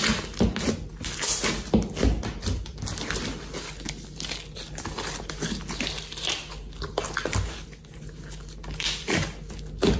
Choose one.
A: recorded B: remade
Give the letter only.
A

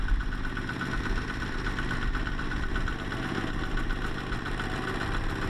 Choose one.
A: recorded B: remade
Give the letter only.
A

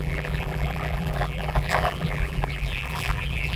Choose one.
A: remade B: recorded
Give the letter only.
A